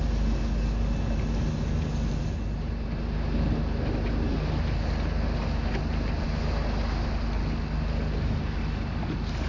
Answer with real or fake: real